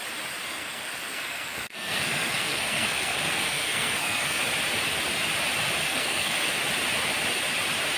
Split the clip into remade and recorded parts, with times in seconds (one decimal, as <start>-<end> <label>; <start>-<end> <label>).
0.0-0.5 recorded; 0.5-4.4 remade; 4.4-5.8 recorded; 5.8-6.6 remade; 6.6-8.0 recorded